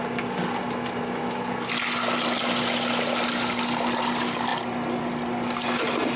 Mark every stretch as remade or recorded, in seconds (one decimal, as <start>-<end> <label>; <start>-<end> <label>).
0.0-6.2 recorded